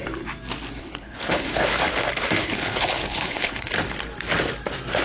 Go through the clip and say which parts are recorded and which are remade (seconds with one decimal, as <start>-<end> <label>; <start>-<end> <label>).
0.0-0.8 recorded; 0.8-1.5 remade; 1.5-2.4 recorded; 2.4-3.7 remade; 3.7-5.0 recorded